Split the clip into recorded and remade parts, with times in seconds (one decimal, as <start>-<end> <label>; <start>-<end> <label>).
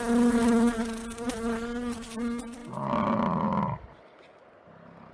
0.0-5.1 recorded